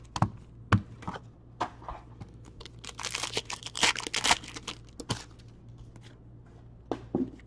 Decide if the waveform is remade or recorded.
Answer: recorded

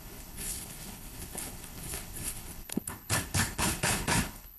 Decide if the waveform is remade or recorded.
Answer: remade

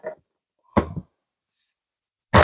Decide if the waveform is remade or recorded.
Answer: recorded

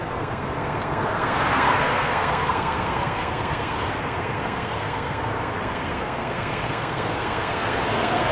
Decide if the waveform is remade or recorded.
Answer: remade